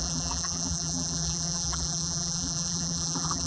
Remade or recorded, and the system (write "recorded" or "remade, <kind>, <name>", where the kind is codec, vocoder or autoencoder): remade, vocoder, BigVGAN v2